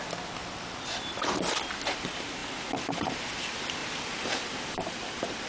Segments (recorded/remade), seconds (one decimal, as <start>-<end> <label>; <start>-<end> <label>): 0.0-3.8 recorded; 3.8-5.5 remade